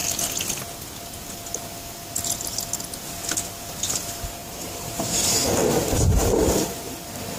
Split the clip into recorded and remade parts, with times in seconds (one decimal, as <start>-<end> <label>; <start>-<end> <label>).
0.0-4.4 recorded; 4.4-5.0 remade; 5.0-6.2 recorded; 6.2-6.8 remade; 6.8-7.4 recorded